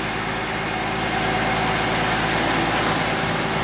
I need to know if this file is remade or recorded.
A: recorded